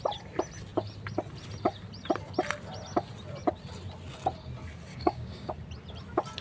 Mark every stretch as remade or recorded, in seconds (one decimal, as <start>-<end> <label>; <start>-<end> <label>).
0.0-4.9 recorded; 4.9-5.5 remade; 5.5-6.4 recorded